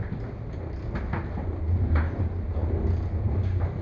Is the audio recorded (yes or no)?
yes